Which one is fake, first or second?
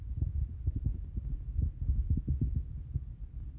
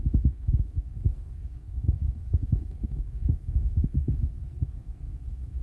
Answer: second